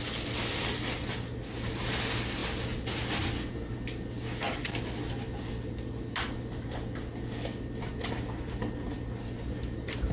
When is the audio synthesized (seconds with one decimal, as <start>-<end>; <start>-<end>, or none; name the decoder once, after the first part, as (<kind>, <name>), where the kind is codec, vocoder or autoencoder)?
none